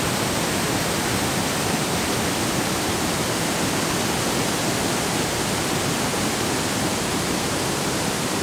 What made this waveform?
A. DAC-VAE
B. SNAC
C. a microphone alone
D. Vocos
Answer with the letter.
C